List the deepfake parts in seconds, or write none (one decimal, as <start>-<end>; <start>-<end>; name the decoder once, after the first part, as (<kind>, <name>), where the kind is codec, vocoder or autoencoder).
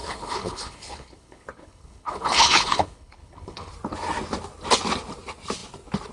0.0-3.7 (codec, HILCodec)